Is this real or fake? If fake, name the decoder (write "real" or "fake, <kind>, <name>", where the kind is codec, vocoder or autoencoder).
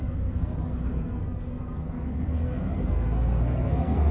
fake, codec, SNAC